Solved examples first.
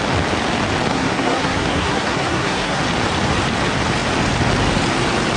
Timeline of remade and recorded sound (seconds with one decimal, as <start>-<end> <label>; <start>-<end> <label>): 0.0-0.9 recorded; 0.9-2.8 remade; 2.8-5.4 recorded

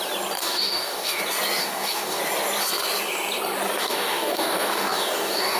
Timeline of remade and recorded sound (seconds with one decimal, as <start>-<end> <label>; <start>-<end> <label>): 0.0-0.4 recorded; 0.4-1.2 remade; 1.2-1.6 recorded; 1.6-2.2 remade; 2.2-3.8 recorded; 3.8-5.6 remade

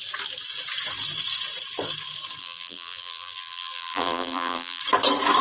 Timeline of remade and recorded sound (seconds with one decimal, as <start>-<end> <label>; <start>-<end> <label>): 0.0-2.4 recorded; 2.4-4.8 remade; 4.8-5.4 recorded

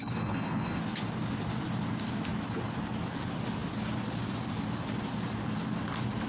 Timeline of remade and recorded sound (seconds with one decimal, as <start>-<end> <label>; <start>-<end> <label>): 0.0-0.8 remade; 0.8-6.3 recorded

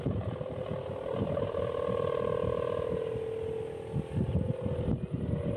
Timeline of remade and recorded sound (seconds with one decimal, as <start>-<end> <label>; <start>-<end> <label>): 0.0-5.6 recorded

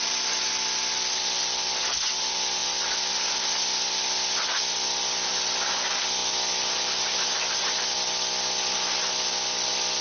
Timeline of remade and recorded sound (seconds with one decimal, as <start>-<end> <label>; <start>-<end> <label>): 0.0-10.0 recorded